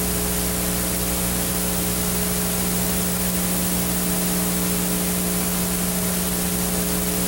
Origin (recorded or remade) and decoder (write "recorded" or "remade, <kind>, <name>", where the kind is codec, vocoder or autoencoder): recorded